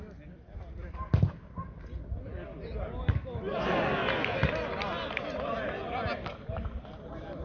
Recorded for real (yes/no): yes